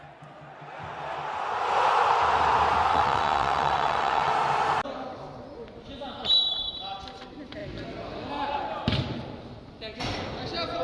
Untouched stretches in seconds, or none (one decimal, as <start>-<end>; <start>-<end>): 0.0-2.9; 4.3-10.8